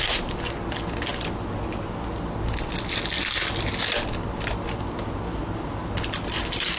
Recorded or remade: recorded